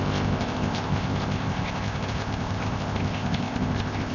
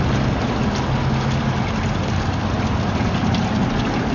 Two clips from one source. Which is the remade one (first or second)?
first